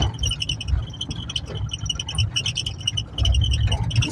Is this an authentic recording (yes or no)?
yes